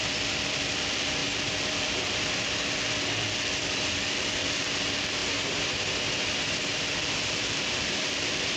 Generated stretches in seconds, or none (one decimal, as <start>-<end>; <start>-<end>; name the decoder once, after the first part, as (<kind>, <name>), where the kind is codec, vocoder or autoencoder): 0.0-5.2 (vocoder, BigVGAN v2); 6.9-8.6